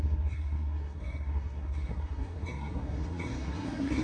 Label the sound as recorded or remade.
remade